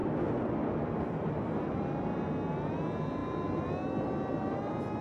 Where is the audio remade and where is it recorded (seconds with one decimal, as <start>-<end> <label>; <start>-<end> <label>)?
0.0-5.0 recorded